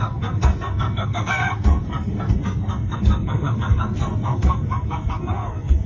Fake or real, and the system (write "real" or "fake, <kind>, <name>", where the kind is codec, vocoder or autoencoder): fake, codec, SNAC